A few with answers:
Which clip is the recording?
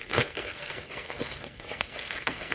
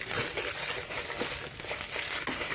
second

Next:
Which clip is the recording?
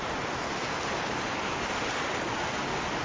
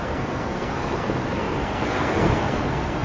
first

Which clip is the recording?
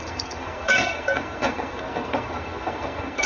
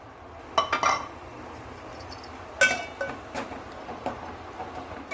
second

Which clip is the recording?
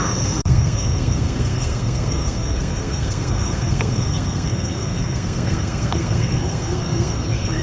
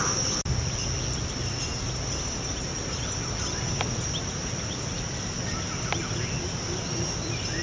second